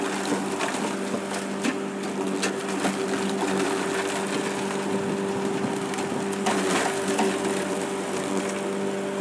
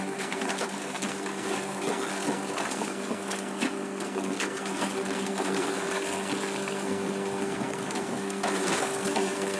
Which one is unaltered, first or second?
first